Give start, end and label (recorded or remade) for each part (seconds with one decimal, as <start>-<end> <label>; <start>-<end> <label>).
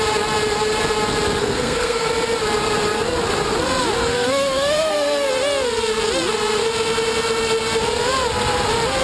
0.0-1.4 recorded; 1.4-2.1 remade; 2.1-4.0 recorded; 4.0-5.3 remade; 5.3-9.0 recorded